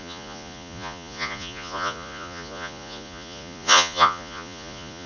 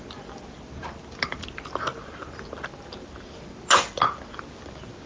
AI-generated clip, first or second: first